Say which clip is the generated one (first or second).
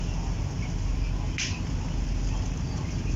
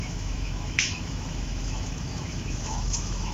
second